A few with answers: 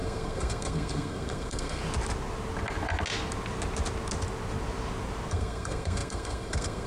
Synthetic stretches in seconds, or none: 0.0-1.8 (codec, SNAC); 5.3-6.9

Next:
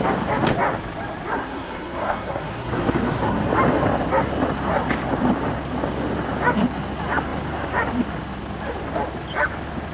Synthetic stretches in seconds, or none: 1.3-3.4 (codec, SNAC)

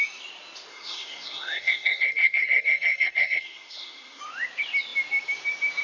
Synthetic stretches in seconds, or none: 0.7-4.2 (codec, SNAC)

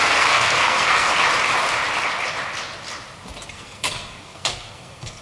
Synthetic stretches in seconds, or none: 0.0-1.1 (codec, SNAC); 3.5-5.2